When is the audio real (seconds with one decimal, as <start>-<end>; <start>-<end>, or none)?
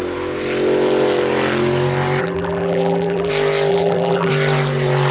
0.0-2.2; 3.3-3.7; 4.3-5.1